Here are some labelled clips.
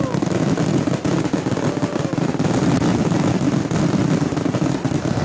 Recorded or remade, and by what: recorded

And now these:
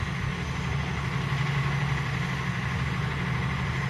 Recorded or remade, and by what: recorded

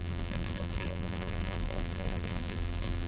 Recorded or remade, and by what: remade, vocoder, BigVGAN v2